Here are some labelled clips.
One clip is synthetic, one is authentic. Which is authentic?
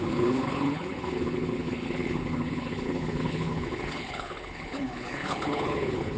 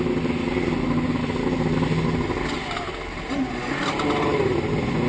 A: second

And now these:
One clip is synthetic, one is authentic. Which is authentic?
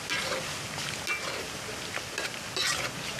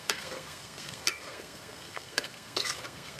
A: first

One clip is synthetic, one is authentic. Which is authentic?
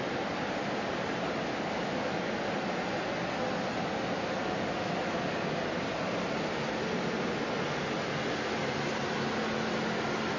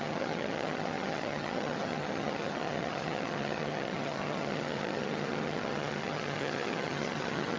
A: first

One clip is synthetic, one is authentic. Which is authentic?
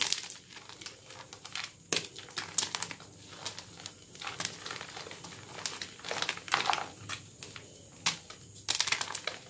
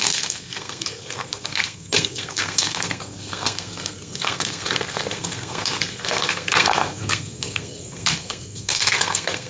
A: first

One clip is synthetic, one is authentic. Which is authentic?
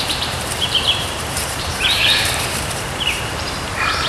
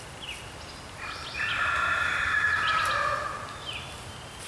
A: second